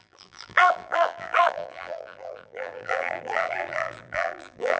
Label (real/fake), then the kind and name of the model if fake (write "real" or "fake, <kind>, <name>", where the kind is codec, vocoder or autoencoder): fake, vocoder, BigVGAN v2